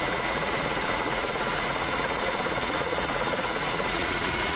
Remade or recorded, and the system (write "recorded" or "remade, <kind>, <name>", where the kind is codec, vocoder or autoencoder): remade, vocoder, Vocos